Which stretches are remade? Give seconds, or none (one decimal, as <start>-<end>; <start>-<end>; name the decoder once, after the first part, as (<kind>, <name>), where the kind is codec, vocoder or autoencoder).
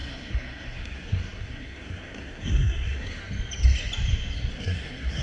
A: 0.0-3.2 (codec, SNAC); 4.5-5.2